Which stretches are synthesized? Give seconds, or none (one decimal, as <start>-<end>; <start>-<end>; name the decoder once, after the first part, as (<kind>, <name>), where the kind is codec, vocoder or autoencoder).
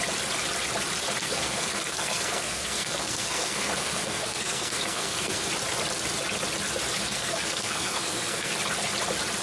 1.2-5.5 (codec, SNAC); 7.0-8.5